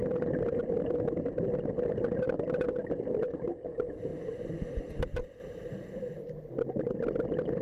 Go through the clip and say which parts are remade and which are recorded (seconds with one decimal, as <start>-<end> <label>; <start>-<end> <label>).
0.0-7.6 recorded